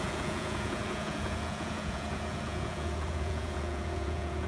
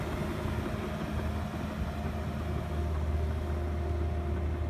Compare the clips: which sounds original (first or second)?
second